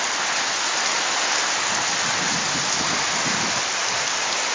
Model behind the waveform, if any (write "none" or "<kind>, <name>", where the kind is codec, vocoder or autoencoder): none